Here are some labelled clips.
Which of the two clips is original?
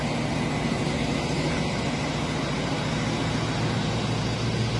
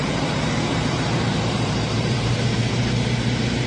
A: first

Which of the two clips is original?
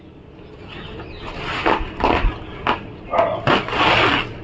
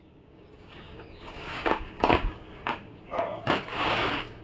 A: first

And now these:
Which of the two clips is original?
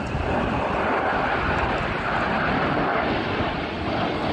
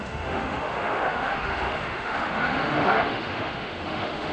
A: first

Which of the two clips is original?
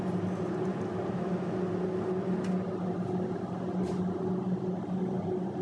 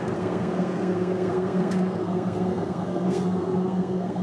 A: first